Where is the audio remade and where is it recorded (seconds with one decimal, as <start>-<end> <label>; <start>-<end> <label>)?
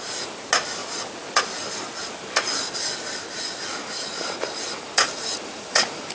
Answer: 0.0-2.0 recorded; 2.0-2.5 remade; 2.5-3.8 recorded; 3.8-6.1 remade